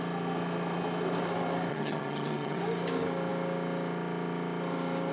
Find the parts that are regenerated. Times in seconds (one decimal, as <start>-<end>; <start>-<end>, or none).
1.7-2.6